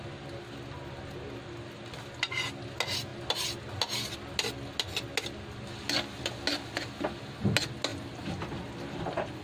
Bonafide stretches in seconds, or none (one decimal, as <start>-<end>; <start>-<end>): 0.0-9.4